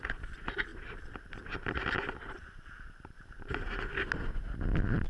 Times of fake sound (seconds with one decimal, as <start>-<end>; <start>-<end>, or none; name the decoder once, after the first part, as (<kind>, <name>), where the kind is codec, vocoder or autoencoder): 0.7-3.8 (vocoder, BigVGAN v2)